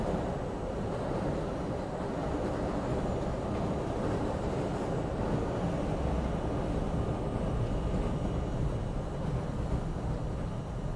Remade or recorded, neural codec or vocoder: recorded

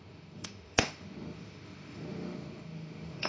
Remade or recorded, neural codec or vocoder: remade, autoencoder, DAC-VAE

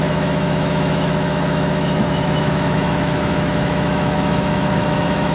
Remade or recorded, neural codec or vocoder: remade, autoencoder, DAC-VAE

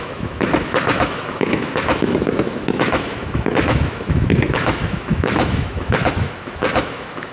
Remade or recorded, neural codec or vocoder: remade, autoencoder, DAC-VAE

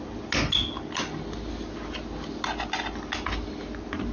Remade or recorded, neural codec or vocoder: recorded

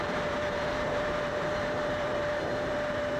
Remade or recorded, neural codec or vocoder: remade, vocoder, BigVGAN v2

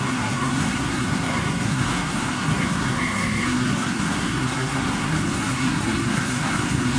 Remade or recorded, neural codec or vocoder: remade, codec, SNAC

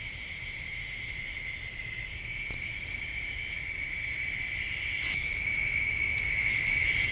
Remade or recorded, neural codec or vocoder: recorded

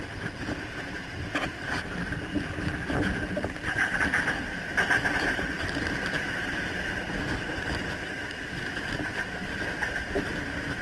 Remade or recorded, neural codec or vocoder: recorded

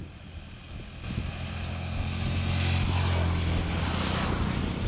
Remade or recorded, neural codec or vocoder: recorded